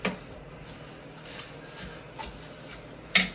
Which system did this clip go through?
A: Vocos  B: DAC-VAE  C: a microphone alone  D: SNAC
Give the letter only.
C